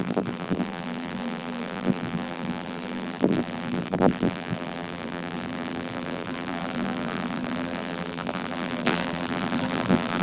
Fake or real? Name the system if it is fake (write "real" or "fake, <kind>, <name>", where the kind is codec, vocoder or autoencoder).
fake, vocoder, BigVGAN v2